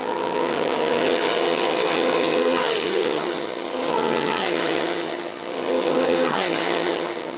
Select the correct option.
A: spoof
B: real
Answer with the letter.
A